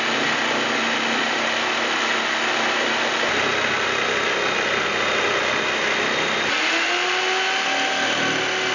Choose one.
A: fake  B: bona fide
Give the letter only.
B